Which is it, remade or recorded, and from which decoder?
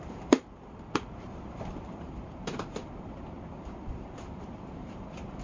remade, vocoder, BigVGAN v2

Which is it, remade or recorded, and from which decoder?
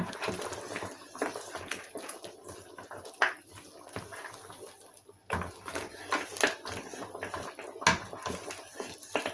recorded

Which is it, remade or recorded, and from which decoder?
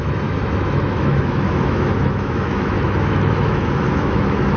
remade, autoencoder, DAC-VAE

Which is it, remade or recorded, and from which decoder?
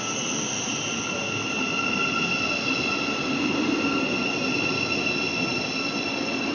recorded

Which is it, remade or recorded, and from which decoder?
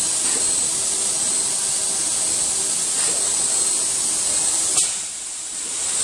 recorded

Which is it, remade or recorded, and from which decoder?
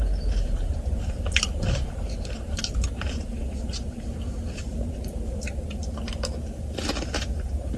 remade, vocoder, BigVGAN v2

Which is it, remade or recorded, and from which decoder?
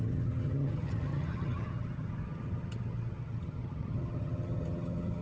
remade, vocoder, HiFi-GAN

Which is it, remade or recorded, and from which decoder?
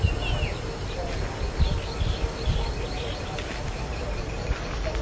recorded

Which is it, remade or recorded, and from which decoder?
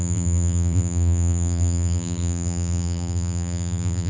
remade, vocoder, BigVGAN v2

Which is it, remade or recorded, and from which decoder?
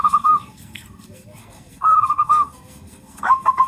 remade, codec, SNAC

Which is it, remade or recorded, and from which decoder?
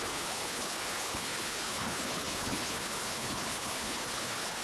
remade, codec, HILCodec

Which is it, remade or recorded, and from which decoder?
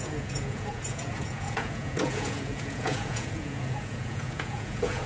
remade, vocoder, Vocos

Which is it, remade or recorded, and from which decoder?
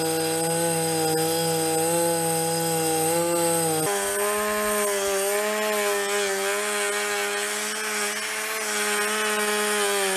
recorded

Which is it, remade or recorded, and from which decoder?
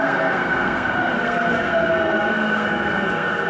remade, codec, SNAC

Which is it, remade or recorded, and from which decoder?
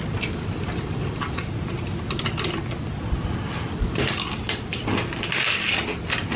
recorded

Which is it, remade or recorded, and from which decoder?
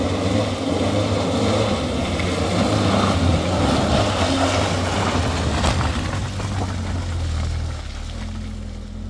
recorded